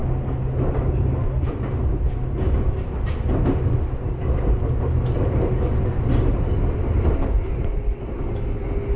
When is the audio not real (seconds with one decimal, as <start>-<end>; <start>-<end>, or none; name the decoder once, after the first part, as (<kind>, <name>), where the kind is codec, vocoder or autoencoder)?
none

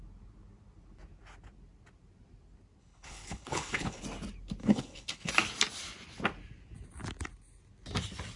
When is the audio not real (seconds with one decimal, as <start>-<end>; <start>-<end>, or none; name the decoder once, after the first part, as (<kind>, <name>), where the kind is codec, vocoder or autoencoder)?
2.8-4.0 (codec, HILCodec); 4.6-5.3